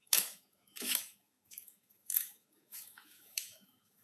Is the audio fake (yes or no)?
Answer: yes